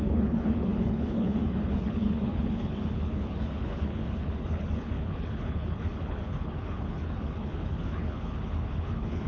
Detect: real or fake fake